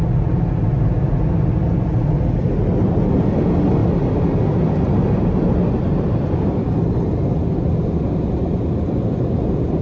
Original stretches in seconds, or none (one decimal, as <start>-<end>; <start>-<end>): 0.0-9.8